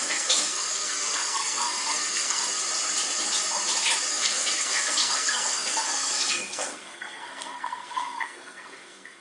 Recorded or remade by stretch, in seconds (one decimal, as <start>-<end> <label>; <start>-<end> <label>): 0.0-2.4 remade; 2.4-4.1 recorded; 4.1-9.2 remade